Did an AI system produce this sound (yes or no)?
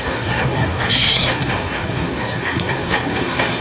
yes